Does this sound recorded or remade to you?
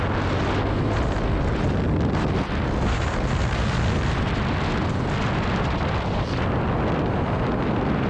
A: recorded